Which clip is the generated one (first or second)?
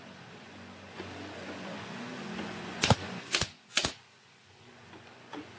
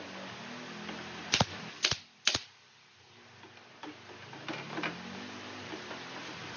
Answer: first